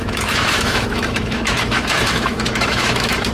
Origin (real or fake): fake